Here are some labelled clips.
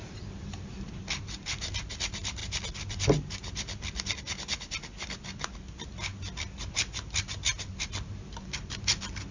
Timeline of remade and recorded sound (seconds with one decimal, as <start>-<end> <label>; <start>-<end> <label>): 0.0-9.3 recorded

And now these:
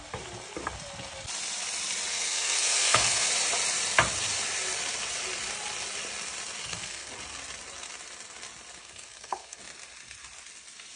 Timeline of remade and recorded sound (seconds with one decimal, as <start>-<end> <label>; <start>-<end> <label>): 0.0-2.1 recorded; 2.1-3.3 remade; 3.3-6.6 recorded; 6.6-7.1 remade; 7.1-8.8 recorded; 8.8-9.6 remade; 9.6-11.0 recorded

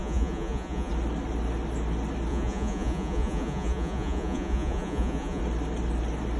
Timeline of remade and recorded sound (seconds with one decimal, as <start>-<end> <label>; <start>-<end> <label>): 0.0-0.9 remade; 0.9-2.3 recorded; 2.3-5.4 remade; 5.4-6.4 recorded

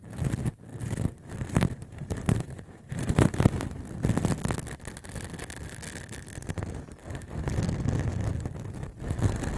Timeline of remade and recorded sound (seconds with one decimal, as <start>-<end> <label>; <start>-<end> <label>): 0.0-0.7 recorded; 0.7-3.8 remade; 3.8-9.6 recorded

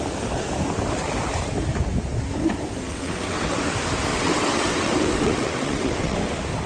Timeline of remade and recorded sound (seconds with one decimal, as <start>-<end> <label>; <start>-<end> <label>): 0.0-2.9 recorded; 2.9-3.6 remade; 3.6-4.1 recorded; 4.1-6.2 remade; 6.2-6.7 recorded